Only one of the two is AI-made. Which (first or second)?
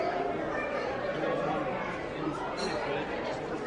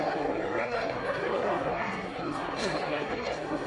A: second